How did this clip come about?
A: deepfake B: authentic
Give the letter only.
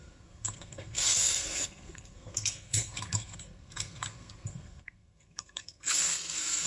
A